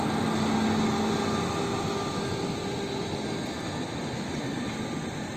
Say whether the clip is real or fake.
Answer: real